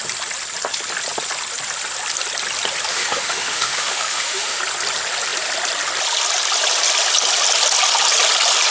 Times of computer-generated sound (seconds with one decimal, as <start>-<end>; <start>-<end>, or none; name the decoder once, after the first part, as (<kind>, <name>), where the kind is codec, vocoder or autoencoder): 2.9-4.6 (autoencoder, DAC-VAE)